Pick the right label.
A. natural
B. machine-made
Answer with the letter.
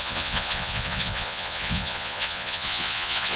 B